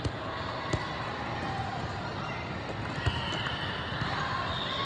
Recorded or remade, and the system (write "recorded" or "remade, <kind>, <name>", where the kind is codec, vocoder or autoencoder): recorded